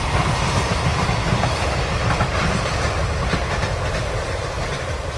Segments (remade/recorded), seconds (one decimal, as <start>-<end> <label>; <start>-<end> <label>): 0.0-3.0 remade; 3.0-3.9 recorded; 3.9-5.2 remade